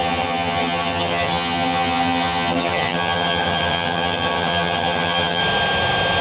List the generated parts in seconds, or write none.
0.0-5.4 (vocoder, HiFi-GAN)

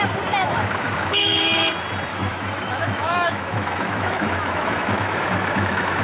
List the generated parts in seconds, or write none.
0.4-1.4 (autoencoder, DAC-VAE); 2.1-6.0

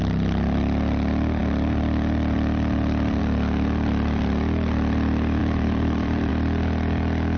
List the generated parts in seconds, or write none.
5.4-6.3 (vocoder, BigVGAN v2)